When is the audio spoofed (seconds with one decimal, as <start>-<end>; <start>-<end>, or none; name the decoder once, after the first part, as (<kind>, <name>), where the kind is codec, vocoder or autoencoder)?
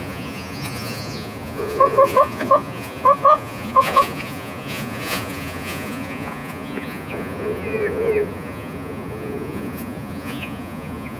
0.0-11.2 (vocoder, Vocos)